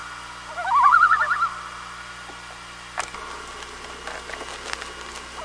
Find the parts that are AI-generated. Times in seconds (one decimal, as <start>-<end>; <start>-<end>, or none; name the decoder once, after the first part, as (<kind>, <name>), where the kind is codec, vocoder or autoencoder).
none